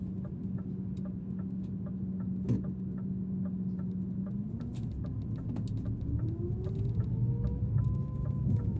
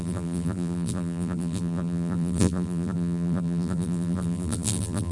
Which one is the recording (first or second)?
first